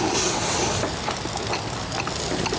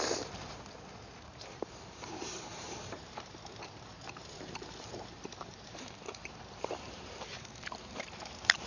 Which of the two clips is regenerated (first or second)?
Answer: second